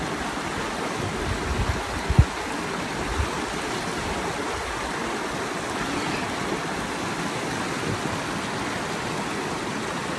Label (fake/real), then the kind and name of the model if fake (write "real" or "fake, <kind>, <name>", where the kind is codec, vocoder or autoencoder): real